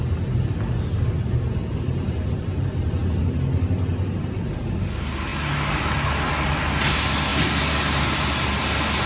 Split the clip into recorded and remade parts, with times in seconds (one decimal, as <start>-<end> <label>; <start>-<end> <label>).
0.0-9.1 recorded